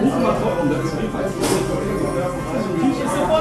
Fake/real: real